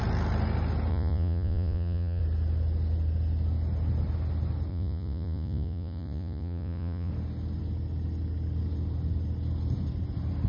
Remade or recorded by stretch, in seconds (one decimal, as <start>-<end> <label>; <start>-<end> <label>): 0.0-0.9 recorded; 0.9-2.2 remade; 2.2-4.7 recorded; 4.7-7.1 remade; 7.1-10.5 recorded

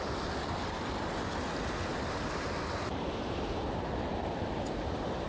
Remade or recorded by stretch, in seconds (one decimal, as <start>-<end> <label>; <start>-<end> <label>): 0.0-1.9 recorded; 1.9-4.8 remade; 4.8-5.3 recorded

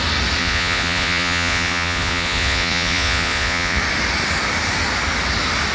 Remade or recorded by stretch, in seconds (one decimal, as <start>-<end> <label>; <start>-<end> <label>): 0.0-0.4 recorded; 0.4-3.8 remade; 3.8-5.7 recorded